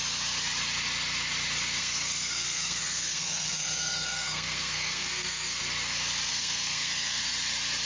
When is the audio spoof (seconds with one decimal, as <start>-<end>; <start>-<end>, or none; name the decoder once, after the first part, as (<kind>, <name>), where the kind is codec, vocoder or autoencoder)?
1.8-5.6 (codec, SNAC); 6.3-7.3